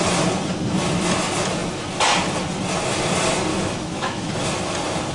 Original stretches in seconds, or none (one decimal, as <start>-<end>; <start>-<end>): 0.0-3.5; 4.3-5.1